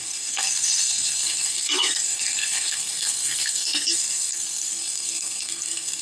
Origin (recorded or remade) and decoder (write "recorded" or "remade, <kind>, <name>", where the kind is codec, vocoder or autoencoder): remade, codec, SNAC